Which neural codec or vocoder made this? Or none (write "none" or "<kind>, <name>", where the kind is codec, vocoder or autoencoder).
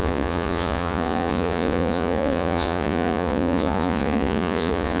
vocoder, Vocos